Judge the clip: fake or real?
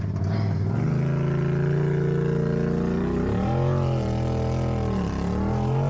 real